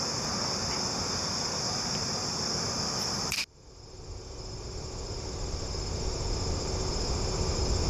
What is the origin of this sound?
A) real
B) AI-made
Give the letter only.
A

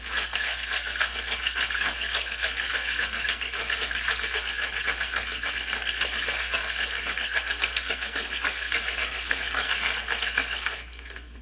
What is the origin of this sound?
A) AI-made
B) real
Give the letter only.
A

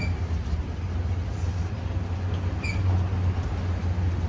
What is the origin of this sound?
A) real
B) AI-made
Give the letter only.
A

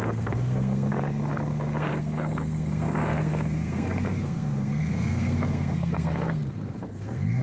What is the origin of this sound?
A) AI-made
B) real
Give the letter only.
A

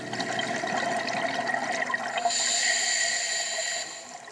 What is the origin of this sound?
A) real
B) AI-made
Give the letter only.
A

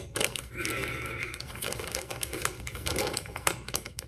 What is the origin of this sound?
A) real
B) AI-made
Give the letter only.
B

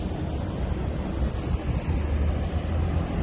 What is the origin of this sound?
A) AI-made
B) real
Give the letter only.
B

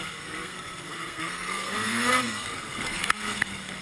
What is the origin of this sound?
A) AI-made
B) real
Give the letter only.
A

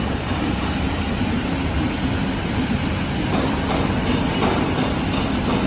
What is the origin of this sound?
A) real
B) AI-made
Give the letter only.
A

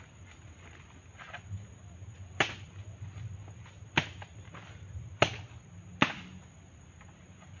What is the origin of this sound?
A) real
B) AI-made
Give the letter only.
A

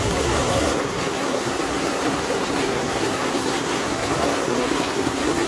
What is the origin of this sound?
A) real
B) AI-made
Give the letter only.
B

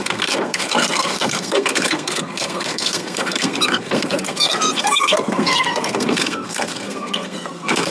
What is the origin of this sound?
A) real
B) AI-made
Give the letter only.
B